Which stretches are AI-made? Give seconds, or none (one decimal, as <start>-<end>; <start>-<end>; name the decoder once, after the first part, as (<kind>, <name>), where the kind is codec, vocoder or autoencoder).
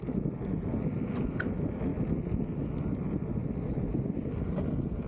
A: none